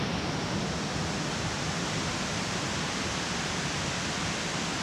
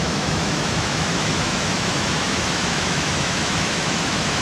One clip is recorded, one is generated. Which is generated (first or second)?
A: second